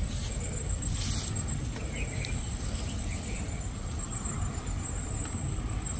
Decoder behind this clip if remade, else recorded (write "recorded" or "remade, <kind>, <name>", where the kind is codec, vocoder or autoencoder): recorded